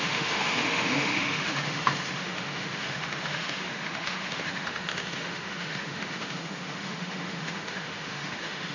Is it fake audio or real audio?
fake